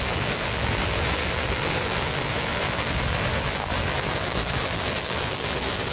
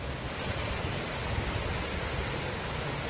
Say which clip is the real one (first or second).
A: second